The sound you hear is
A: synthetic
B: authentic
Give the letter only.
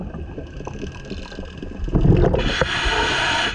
B